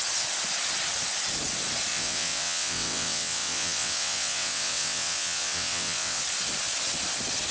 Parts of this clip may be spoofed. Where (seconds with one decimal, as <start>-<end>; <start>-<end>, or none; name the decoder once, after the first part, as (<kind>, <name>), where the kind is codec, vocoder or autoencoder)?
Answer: 1.9-6.2 (vocoder, WaveNeXt)